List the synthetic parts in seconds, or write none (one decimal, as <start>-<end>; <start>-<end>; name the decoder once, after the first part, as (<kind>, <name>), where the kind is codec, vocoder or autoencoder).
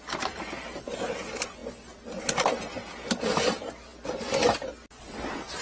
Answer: none